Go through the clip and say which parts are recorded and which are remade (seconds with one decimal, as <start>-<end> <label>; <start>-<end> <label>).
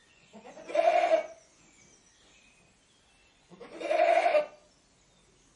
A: 0.0-1.8 remade; 1.8-3.2 recorded; 3.2-4.4 remade; 4.4-5.6 recorded